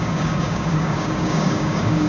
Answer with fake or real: fake